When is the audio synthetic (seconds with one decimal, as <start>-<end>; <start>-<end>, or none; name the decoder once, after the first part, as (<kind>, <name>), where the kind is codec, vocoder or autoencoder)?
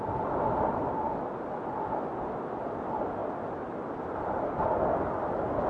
none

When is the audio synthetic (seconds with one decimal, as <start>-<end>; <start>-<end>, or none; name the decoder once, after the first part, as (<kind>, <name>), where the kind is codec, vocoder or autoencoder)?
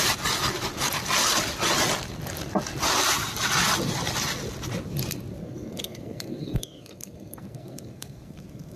5.4-8.8 (codec, SNAC)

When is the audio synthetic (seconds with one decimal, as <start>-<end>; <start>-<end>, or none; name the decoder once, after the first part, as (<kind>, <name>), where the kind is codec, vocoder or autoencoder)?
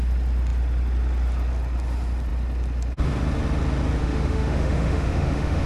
4.0-5.7 (autoencoder, DAC-VAE)